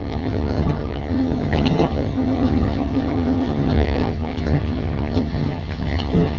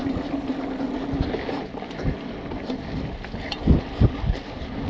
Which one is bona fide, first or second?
second